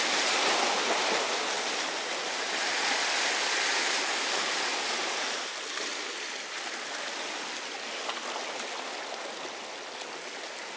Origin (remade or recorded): recorded